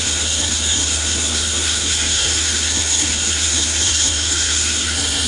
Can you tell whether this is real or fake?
fake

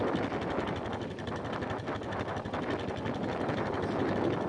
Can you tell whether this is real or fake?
real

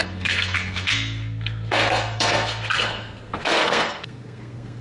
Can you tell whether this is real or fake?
fake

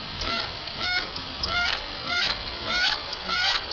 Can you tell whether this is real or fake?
fake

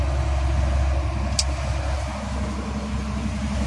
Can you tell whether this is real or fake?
real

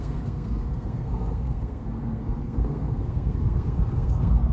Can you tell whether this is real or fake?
fake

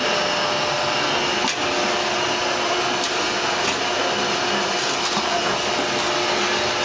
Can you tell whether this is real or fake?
real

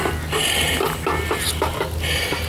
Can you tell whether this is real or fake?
real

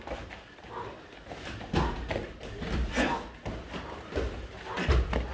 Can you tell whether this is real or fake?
real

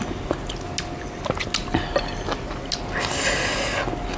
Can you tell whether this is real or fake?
real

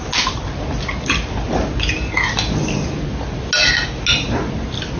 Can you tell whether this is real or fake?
real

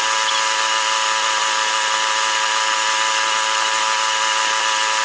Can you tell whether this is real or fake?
real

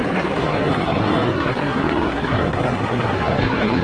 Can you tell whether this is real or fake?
fake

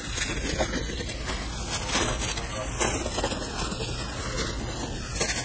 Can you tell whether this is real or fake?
real